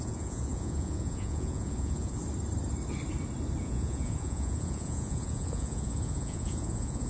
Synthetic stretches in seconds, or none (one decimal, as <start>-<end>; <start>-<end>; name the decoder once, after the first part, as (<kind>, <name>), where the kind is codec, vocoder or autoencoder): 0.0-2.2 (vocoder, Vocos); 3.6-7.1